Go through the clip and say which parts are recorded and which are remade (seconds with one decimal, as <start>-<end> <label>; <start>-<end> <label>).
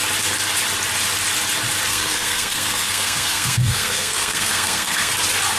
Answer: 0.0-1.9 recorded; 1.9-5.1 remade; 5.1-5.6 recorded